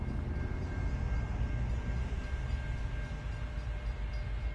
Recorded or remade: recorded